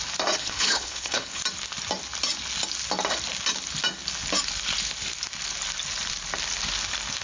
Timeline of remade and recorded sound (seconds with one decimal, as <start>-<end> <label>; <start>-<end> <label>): 0.0-0.4 recorded; 0.4-1.4 remade; 1.4-7.2 recorded